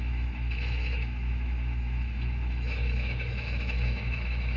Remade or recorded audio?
remade